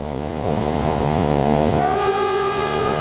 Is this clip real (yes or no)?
no